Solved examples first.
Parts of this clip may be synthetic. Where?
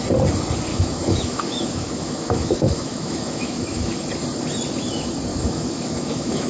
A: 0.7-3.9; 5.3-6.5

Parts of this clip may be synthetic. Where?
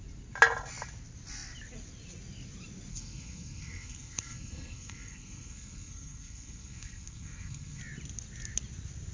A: 2.9-7.8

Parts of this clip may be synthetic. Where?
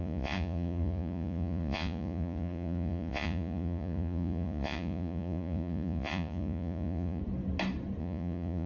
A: 0.0-7.2; 8.0-8.7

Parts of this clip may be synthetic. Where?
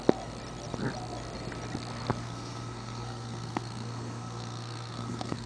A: 2.2-5.5